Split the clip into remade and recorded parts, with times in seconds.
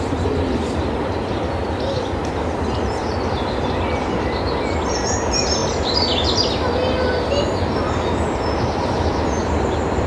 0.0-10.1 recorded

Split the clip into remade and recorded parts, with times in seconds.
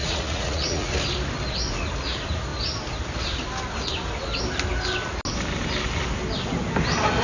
0.0-0.9 remade; 0.9-7.2 recorded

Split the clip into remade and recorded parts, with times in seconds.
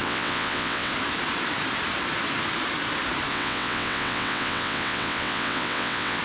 0.0-0.9 remade; 0.9-3.3 recorded; 3.3-6.2 remade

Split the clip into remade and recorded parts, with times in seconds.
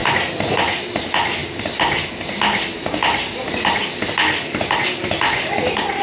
0.0-1.4 recorded; 1.4-3.5 remade; 3.5-6.0 recorded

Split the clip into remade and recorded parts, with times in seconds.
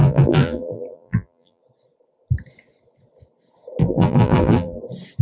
0.0-1.6 remade; 1.6-3.8 recorded; 3.8-4.8 remade; 4.8-5.2 recorded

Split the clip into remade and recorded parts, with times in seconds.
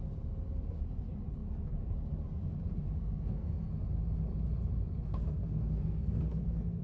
0.0-3.0 recorded; 3.0-3.7 remade; 3.7-5.1 recorded; 5.1-6.8 remade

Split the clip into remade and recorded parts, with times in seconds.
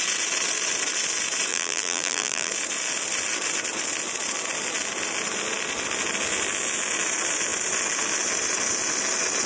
0.0-1.5 recorded; 1.5-2.5 remade; 2.5-9.5 recorded